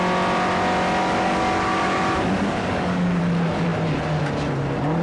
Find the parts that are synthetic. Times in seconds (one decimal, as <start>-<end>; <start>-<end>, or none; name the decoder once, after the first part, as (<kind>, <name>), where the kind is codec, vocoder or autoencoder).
1.0-3.2 (codec, DAC)

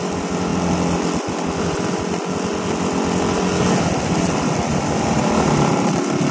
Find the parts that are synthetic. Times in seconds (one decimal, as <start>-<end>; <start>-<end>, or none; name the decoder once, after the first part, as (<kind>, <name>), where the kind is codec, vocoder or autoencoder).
none